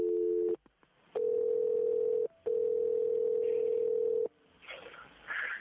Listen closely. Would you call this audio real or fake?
real